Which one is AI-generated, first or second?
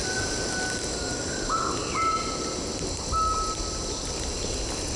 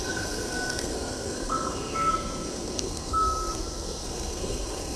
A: second